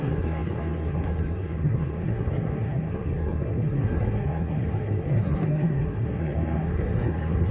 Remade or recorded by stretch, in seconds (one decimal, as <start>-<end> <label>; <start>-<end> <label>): 0.0-7.5 remade